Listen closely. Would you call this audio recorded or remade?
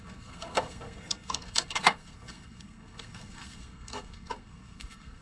remade